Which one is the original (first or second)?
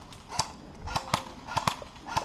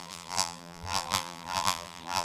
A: first